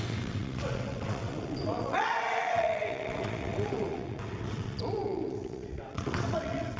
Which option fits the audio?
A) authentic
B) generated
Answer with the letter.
B